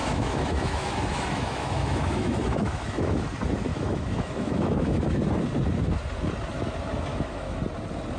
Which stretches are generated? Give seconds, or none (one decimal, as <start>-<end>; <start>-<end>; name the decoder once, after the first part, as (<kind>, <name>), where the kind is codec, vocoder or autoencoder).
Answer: 0.0-3.3 (autoencoder, DAC-VAE); 3.7-5.2; 7.1-7.6